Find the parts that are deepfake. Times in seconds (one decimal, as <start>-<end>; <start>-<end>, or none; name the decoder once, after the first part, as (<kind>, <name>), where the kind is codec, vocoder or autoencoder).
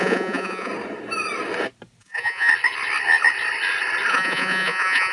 0.0-0.7 (vocoder, Vocos); 2.0-2.5; 4.1-5.1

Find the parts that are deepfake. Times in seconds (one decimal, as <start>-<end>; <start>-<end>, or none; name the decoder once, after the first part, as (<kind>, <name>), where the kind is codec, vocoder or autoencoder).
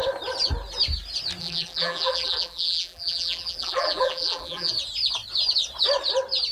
1.4-4.7 (vocoder, BigVGAN v2)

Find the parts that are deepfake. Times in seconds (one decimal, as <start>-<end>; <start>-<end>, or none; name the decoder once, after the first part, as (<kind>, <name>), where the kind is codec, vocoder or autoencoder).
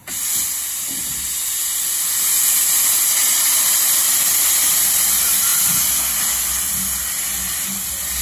4.3-4.9 (vocoder, BigVGAN v2)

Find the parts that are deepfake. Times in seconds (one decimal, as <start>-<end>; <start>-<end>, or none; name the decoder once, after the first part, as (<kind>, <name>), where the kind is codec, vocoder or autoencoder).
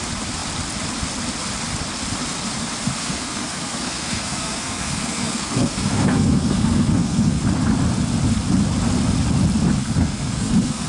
3.0-7.4 (codec, SNAC); 9.8-10.9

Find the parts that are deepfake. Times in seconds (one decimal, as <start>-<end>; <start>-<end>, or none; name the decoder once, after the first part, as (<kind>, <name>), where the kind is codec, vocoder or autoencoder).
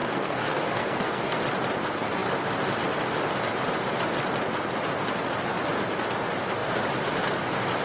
0.0-1.4 (codec, SNAC)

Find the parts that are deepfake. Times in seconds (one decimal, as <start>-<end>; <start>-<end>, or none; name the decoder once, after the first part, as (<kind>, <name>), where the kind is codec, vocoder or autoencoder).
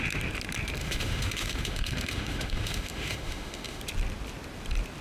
0.8-3.8 (autoencoder, DAC-VAE)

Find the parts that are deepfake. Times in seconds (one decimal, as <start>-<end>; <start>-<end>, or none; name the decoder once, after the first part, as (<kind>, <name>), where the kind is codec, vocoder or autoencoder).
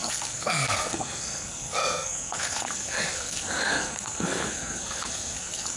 0.0-5.8 (codec, SNAC)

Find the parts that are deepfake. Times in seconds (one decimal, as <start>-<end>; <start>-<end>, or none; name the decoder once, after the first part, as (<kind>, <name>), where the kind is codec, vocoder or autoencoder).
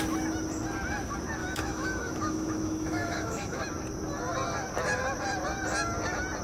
1.4-3.6 (autoencoder, DAC-VAE)